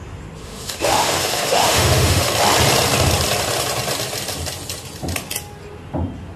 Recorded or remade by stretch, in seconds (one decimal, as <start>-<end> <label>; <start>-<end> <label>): 0.0-0.4 recorded; 0.4-2.3 remade; 2.3-6.4 recorded